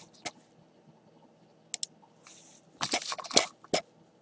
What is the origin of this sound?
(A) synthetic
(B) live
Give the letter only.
B